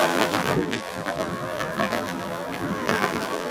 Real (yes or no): no